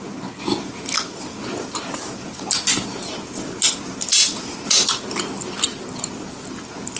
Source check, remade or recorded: recorded